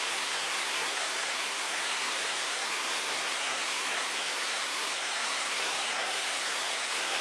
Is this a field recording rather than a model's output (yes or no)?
no